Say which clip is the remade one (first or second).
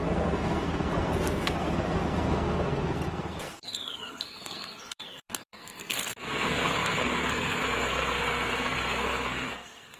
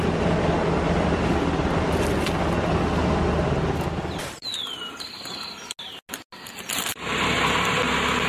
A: first